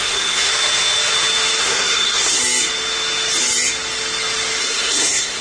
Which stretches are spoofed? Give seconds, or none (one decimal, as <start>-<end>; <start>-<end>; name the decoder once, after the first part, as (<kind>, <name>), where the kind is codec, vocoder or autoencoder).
0.0-0.5 (codec, SNAC); 1.6-2.4; 4.6-5.4